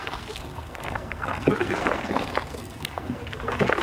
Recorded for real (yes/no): no